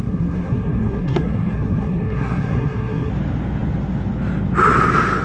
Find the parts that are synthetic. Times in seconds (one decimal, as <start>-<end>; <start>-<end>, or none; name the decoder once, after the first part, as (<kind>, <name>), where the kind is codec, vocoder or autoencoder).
0.0-3.1 (codec, SNAC)